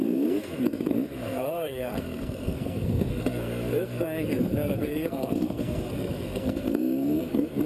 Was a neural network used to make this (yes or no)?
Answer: yes